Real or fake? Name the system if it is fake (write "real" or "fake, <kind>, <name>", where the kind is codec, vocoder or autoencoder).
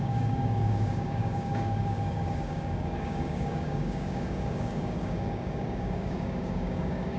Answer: fake, codec, DAC